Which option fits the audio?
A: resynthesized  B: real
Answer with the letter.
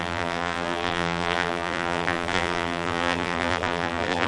A